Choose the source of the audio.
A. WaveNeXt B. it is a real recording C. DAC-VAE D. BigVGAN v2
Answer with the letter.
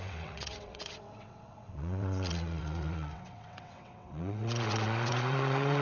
A